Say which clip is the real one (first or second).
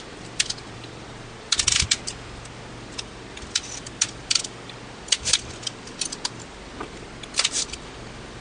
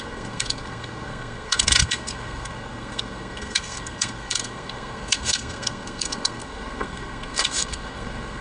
first